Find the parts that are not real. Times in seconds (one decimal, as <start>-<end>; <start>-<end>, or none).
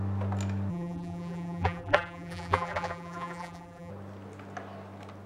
0.7-3.9